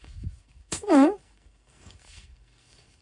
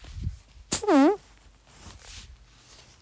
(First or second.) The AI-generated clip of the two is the first